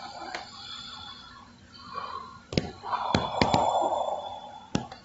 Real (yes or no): no